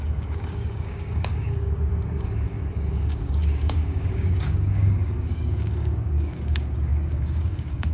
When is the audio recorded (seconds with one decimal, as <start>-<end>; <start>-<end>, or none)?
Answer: none